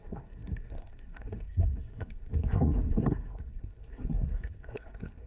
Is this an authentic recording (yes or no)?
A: no